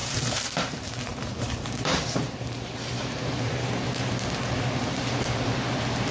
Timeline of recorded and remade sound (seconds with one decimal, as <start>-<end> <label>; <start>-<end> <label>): 0.0-3.7 remade; 3.7-6.1 recorded